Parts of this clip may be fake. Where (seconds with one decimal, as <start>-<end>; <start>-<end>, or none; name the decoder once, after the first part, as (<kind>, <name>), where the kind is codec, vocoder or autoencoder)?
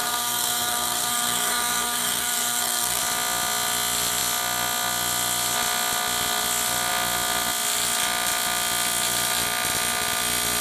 0.0-3.0 (codec, SNAC)